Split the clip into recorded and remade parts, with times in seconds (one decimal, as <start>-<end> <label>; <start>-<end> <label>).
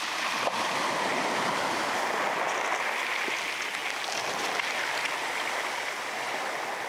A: 0.0-6.9 recorded